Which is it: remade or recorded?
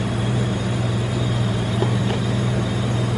remade